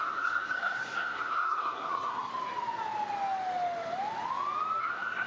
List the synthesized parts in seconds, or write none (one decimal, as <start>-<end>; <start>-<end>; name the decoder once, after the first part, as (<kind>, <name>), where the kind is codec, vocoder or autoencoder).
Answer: 0.0-2.3 (codec, SNAC); 4.8-5.3